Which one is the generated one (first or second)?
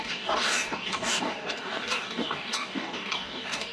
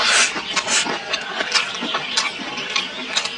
first